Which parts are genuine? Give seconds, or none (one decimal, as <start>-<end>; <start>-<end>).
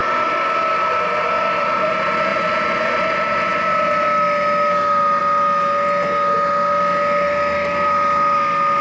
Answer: 0.0-2.3; 2.9-8.8